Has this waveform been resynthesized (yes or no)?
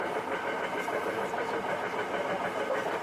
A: no